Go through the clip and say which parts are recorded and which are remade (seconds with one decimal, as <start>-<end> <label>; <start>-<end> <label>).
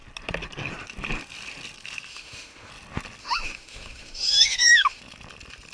0.0-2.1 recorded; 2.1-2.7 remade; 2.7-3.2 recorded; 3.2-5.0 remade; 5.0-5.7 recorded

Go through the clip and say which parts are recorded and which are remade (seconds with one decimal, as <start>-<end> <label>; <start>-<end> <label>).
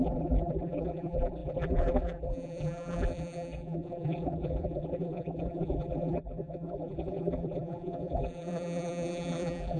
0.0-9.8 remade